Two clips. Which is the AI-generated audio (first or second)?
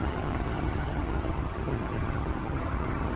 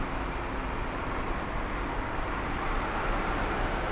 first